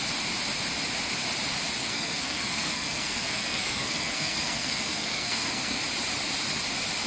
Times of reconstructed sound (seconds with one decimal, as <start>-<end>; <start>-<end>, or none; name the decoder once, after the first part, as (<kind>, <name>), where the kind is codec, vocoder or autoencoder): 1.8-5.8 (codec, SNAC)